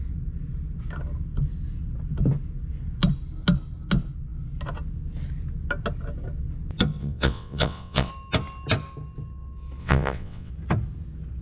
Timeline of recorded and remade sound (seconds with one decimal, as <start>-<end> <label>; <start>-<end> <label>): 0.0-7.0 recorded; 7.0-8.1 remade; 8.1-9.8 recorded; 9.8-10.5 remade; 10.5-11.4 recorded